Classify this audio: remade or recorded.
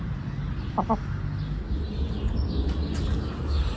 recorded